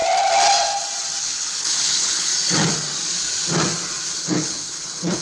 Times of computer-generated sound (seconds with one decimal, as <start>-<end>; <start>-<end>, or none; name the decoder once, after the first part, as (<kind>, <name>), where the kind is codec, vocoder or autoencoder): 1.2-2.3 (codec, HILCodec); 4.2-5.2

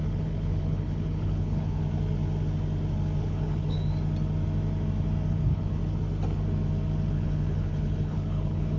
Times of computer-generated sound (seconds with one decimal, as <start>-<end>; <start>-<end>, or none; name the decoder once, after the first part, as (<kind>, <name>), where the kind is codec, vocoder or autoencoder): 0.0-1.8 (codec, HILCodec); 3.2-3.9; 5.3-5.8; 7.1-8.8